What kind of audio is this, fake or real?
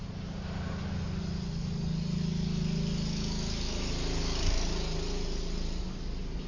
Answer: real